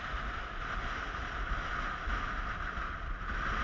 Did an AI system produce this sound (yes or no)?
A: no